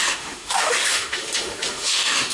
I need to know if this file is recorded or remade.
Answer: remade